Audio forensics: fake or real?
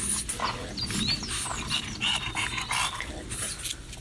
real